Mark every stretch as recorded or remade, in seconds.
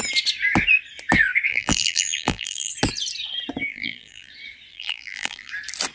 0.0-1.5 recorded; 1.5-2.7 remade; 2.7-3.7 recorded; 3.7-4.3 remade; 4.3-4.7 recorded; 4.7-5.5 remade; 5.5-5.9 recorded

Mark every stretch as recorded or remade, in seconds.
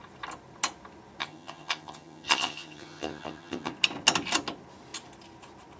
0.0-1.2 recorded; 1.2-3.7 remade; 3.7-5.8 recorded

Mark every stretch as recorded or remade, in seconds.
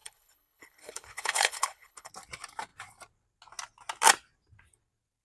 0.0-2.1 remade; 2.1-5.2 recorded